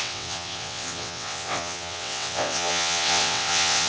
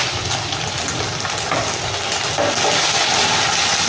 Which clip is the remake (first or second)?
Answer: first